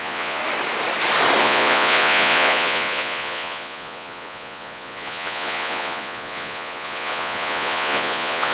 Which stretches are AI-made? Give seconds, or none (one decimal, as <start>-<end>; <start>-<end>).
0.0-0.4; 1.4-8.5